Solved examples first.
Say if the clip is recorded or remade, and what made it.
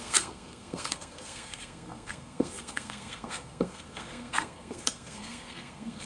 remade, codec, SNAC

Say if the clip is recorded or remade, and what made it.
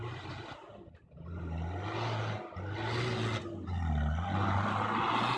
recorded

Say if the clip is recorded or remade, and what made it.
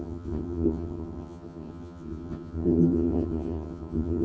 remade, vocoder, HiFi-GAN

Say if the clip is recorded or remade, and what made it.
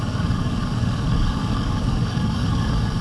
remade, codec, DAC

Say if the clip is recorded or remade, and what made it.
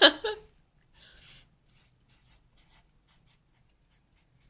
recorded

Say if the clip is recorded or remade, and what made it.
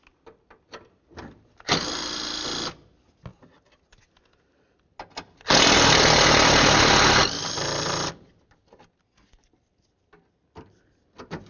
recorded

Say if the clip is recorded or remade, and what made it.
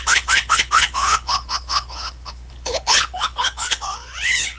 remade, codec, HILCodec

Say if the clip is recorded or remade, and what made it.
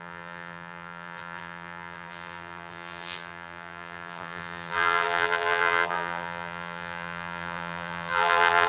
remade, vocoder, BigVGAN v2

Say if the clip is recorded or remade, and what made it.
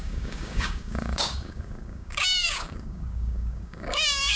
remade, codec, DAC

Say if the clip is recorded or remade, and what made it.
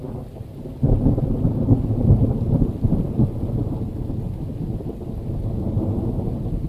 recorded